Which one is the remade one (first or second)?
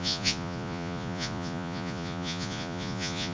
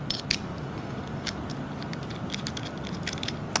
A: first